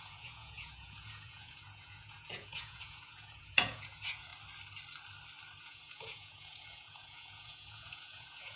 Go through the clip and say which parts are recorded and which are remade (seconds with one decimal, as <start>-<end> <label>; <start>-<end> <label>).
0.0-4.3 remade; 4.3-5.6 recorded; 5.6-8.6 remade

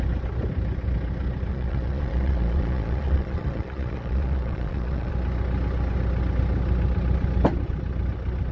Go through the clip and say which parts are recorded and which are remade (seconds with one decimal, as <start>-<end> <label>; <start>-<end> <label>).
0.0-1.5 recorded; 1.5-5.1 remade; 5.1-8.5 recorded

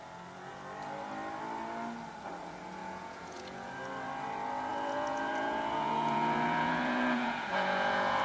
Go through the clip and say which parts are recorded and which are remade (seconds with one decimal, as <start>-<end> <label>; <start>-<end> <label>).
0.0-2.8 recorded; 2.8-3.8 remade; 3.8-4.7 recorded; 4.7-8.2 remade

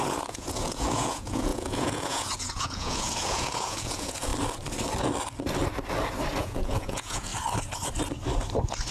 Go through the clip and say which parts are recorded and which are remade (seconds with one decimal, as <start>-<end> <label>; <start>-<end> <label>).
0.0-4.3 remade; 4.3-6.4 recorded; 6.4-7.3 remade; 7.3-8.9 recorded

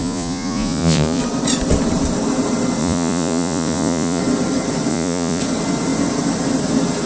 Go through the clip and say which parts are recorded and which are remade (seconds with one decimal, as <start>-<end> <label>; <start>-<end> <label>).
0.0-1.2 remade; 1.2-2.8 recorded; 2.8-4.2 remade; 4.2-4.9 recorded; 4.9-5.4 remade; 5.4-7.1 recorded

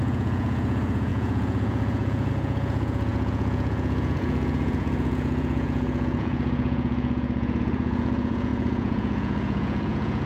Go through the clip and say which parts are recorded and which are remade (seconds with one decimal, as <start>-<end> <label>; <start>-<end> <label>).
0.0-10.3 remade

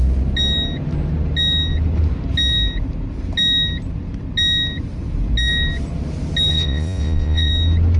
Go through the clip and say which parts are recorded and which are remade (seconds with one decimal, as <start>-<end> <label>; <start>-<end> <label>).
0.0-6.5 recorded; 6.5-7.5 remade; 7.5-8.0 recorded

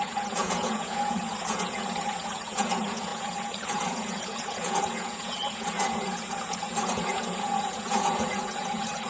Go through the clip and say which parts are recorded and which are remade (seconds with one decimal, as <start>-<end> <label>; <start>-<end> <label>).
0.0-9.1 remade